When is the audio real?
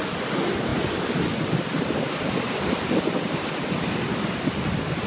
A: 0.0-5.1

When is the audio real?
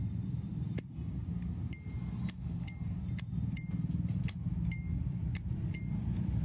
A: 0.0-6.4